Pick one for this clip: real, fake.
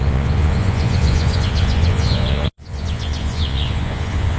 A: fake